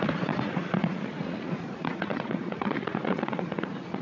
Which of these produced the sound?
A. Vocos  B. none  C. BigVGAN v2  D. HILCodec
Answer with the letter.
A